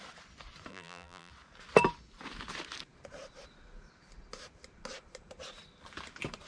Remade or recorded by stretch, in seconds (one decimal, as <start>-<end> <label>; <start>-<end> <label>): 0.0-0.7 recorded; 0.7-1.3 remade; 1.3-6.5 recorded